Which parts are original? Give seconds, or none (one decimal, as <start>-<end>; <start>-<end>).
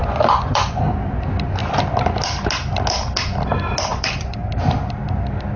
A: 0.8-3.9; 4.5-5.6